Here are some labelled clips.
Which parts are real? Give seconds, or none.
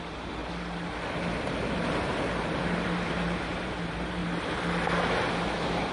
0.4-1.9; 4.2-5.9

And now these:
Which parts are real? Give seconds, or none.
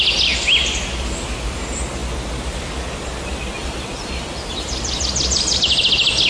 0.0-3.6; 5.8-6.3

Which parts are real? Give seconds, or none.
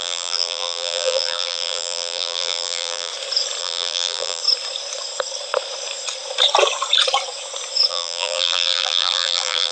3.1-3.6; 4.4-7.9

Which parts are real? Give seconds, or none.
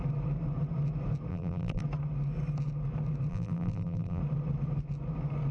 0.0-1.3; 1.8-3.3; 4.2-5.5